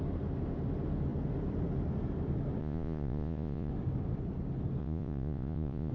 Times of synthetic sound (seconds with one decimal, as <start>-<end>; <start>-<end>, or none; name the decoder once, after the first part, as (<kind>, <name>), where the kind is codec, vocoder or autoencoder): 2.6-3.7 (vocoder, Vocos); 4.8-5.9